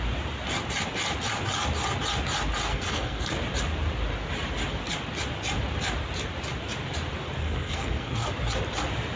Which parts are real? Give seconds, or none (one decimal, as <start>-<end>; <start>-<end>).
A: 0.0-2.7; 3.3-7.4; 8.3-9.2